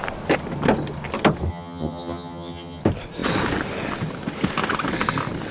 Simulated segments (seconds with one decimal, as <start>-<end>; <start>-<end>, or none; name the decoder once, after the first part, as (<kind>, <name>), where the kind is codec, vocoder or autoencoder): 1.5-2.8 (vocoder, HiFi-GAN)